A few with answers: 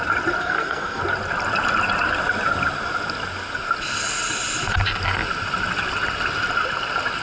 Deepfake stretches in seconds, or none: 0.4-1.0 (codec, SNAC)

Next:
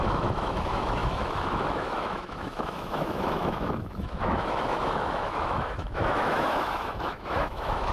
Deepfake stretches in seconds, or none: 0.0-7.9 (autoencoder, DAC-VAE)

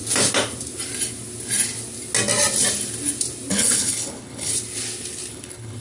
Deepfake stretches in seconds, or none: 3.5-4.5 (codec, HILCodec); 5.3-5.8

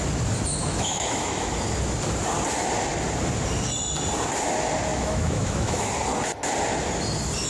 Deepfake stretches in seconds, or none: 0.6-1.5 (autoencoder, DAC-VAE); 4.9-5.9